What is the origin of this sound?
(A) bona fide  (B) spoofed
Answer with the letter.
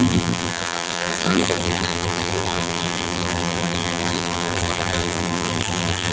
B